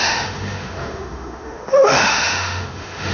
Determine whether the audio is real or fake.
fake